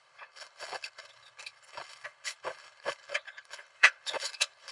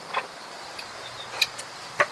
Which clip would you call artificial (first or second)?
first